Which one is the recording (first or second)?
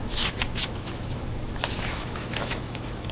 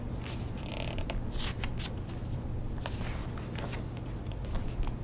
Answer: second